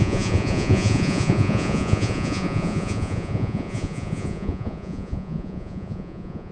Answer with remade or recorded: remade